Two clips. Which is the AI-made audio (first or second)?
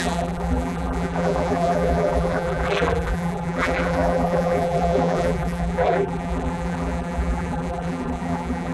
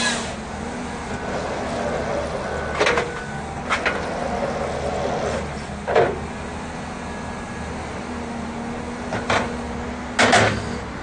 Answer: first